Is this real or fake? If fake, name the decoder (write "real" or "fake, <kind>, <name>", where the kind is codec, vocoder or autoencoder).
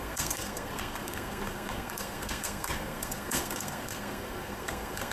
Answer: fake, codec, SNAC